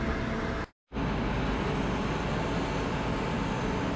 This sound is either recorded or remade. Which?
recorded